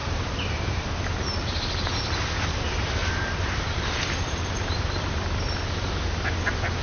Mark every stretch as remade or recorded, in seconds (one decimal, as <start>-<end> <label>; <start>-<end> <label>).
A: 0.0-0.9 remade; 0.9-3.0 recorded; 3.0-5.3 remade; 5.3-6.8 recorded